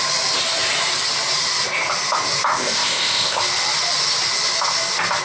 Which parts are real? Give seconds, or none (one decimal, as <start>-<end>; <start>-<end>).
0.0-2.5; 3.4-5.2